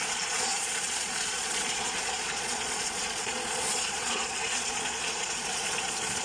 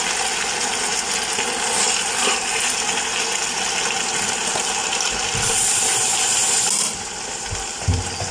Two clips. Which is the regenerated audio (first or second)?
first